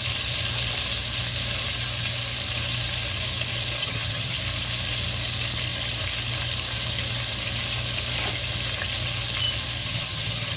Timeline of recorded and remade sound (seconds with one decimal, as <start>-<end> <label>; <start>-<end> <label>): 0.0-3.8 recorded; 3.8-4.4 remade; 4.4-9.8 recorded; 9.8-10.6 remade